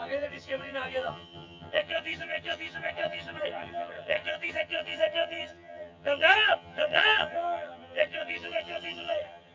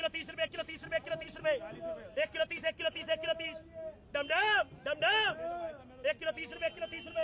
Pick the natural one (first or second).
second